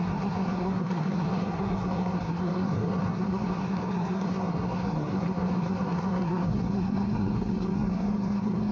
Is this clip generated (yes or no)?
yes